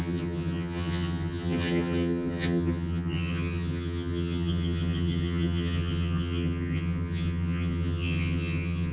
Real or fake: fake